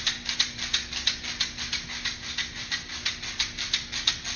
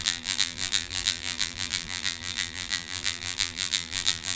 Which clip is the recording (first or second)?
first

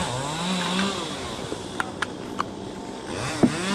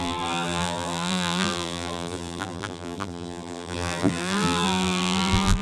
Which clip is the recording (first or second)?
first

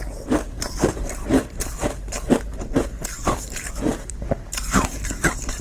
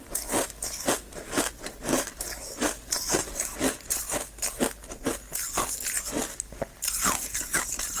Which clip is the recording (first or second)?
second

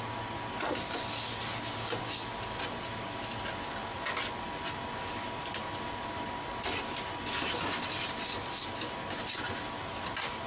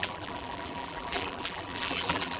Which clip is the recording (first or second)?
first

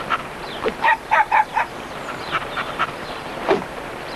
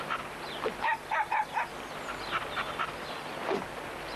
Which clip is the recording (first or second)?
second